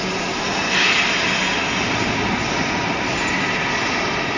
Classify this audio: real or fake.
real